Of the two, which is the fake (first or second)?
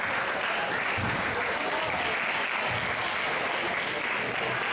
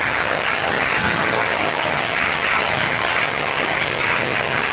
second